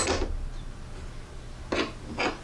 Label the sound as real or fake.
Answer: real